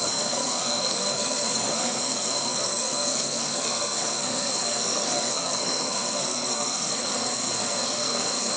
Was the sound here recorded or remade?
remade